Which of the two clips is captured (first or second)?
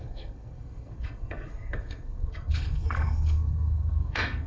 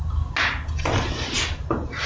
second